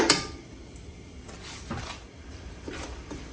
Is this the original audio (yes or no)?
no